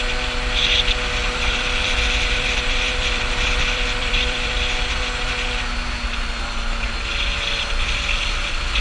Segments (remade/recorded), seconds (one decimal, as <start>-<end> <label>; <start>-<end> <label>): 0.0-1.2 recorded; 1.2-5.3 remade; 5.3-8.8 recorded